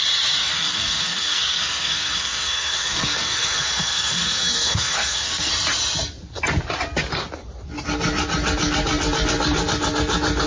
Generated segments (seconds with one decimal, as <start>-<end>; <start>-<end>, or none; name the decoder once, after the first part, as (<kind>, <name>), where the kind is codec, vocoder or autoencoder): 0.4-5.5 (codec, SNAC)